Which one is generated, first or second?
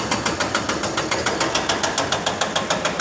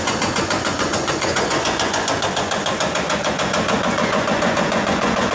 second